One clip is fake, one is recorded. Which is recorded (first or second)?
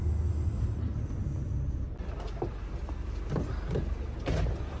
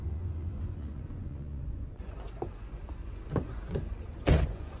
first